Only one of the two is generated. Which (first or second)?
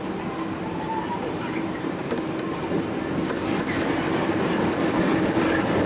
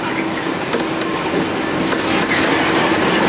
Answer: first